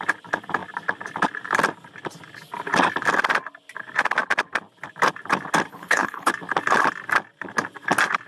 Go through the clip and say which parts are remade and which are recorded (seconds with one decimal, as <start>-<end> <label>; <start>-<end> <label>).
0.0-5.7 recorded; 5.7-6.3 remade; 6.3-8.3 recorded